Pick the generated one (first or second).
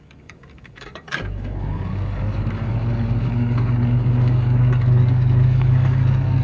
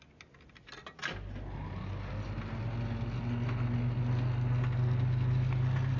first